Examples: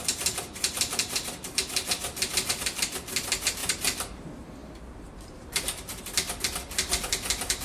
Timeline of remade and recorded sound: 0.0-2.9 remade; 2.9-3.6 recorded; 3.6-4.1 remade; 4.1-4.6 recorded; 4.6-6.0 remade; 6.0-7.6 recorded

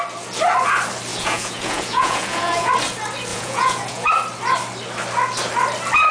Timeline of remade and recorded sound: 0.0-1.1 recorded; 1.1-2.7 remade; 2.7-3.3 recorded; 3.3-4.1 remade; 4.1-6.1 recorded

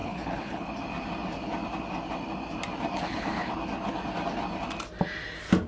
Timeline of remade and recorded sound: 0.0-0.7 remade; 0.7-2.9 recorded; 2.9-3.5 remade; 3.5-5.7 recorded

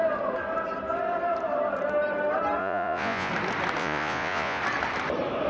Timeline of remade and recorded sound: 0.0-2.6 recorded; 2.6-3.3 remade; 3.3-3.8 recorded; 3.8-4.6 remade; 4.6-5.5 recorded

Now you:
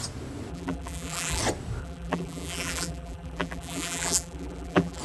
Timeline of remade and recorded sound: 0.0-0.5 recorded; 0.5-1.4 remade; 1.4-1.8 recorded; 1.8-5.0 remade